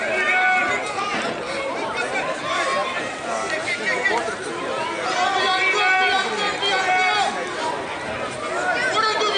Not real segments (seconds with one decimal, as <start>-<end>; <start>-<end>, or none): none